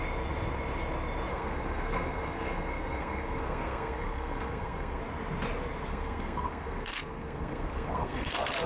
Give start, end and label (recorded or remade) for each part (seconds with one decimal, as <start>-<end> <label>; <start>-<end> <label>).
0.0-1.3 recorded; 1.3-5.0 remade; 5.0-5.9 recorded; 5.9-8.7 remade